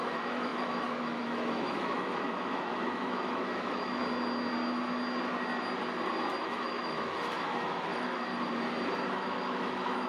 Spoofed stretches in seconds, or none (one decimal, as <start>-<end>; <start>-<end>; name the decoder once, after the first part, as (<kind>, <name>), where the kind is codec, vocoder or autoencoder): 0.0-4.0 (autoencoder, DAC-VAE); 6.4-8.3; 9.1-10.1